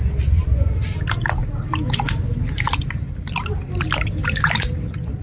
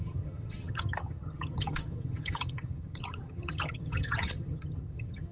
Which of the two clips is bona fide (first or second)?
first